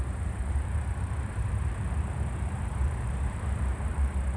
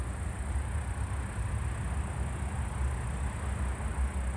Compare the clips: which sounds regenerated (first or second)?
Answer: first